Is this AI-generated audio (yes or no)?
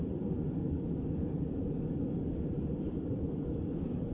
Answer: yes